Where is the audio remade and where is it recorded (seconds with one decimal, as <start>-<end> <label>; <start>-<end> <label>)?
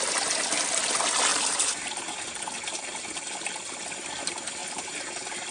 0.0-1.3 recorded; 1.3-2.0 remade; 2.0-4.6 recorded; 4.6-5.1 remade; 5.1-5.5 recorded